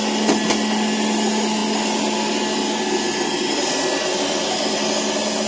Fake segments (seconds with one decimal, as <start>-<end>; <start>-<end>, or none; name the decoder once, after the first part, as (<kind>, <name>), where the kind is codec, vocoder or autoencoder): none